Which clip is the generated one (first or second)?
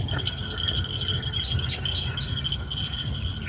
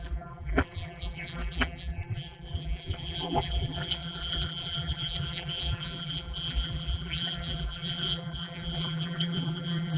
second